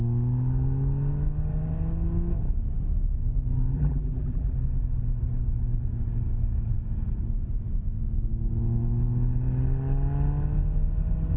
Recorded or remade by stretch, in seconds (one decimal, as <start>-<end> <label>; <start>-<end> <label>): 0.0-3.7 recorded; 3.7-4.5 remade; 4.5-11.4 recorded